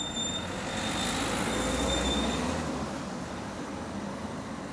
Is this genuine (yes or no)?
yes